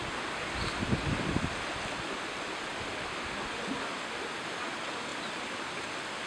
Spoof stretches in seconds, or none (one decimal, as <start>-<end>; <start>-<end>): none